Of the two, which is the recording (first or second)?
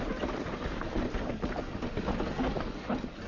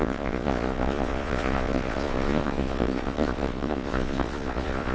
first